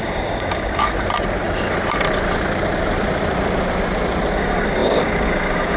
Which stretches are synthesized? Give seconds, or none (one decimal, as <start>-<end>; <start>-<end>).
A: 0.0-0.8; 4.3-5.8